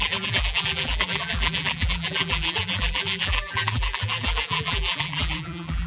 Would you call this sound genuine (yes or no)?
no